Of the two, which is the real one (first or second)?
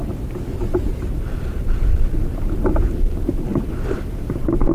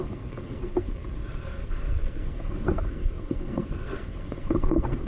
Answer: first